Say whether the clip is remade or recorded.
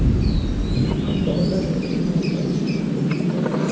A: recorded